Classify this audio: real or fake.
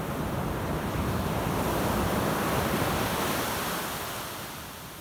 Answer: real